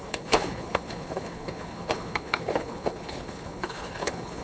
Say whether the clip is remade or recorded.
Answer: remade